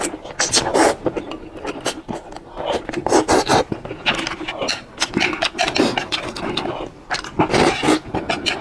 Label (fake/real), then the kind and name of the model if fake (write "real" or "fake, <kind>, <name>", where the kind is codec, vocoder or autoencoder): real